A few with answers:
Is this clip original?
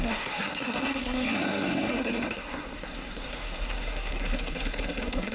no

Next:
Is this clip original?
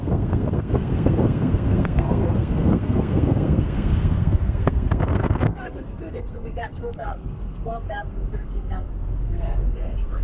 no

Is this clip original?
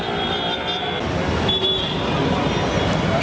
yes